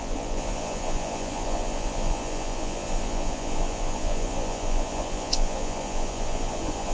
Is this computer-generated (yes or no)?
yes